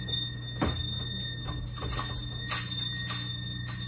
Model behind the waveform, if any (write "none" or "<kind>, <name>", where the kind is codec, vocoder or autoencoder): none